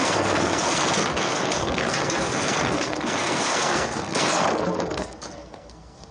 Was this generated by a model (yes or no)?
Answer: yes